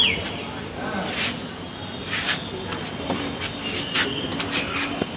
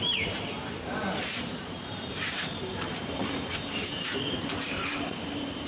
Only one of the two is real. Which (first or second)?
first